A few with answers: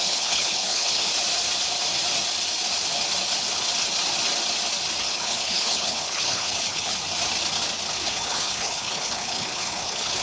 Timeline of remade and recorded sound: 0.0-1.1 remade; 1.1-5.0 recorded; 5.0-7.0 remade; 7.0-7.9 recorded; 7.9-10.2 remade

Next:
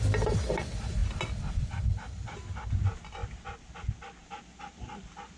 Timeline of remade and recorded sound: 0.0-5.4 recorded